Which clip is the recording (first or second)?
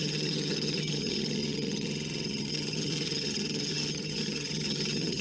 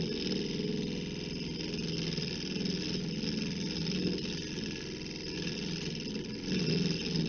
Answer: second